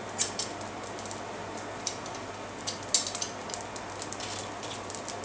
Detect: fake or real real